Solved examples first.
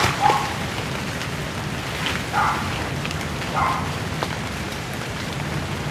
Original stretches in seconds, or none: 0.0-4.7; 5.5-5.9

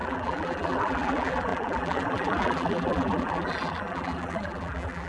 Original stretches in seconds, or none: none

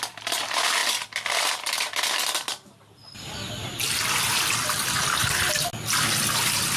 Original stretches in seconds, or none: 5.7-6.3